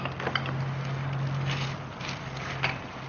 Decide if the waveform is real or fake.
real